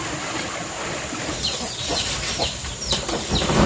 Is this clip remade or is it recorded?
remade